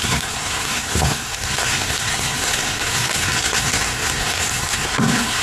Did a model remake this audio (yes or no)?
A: yes